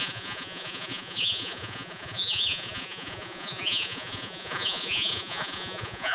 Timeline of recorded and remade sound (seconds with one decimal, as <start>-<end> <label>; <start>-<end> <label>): 0.0-6.1 remade